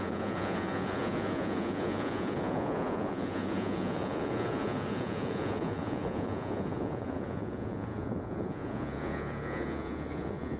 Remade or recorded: remade